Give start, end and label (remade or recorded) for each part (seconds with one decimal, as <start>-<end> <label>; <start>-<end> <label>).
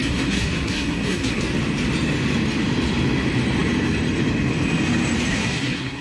0.0-1.4 remade; 1.4-5.3 recorded; 5.3-6.0 remade